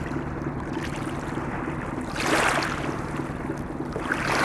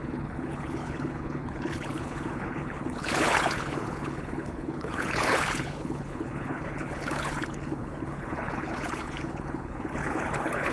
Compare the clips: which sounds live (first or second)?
first